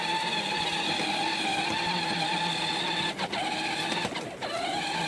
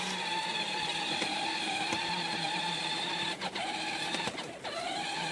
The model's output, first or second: second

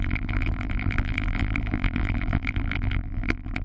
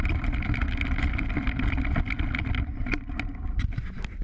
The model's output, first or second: first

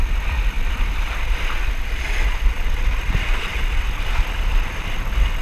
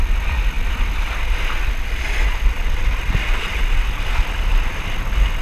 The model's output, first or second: first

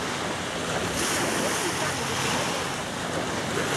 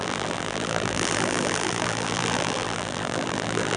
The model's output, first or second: second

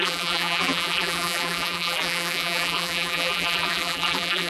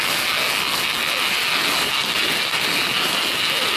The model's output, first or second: first